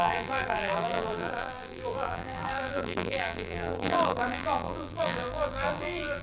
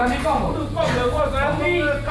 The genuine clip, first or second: second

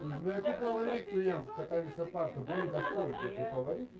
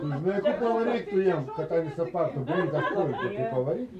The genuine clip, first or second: second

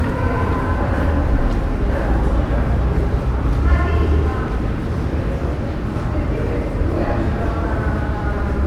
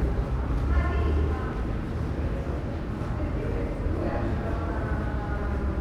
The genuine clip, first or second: second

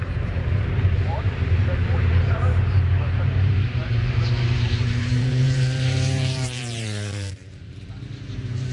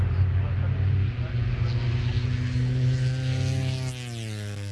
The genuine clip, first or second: second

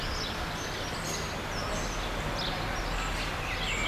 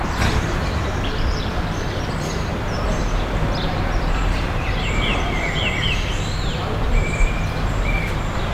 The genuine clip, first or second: first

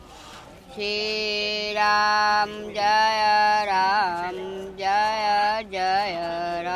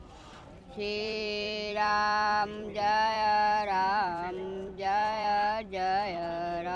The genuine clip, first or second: first